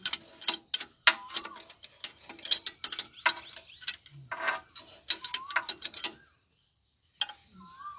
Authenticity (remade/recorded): recorded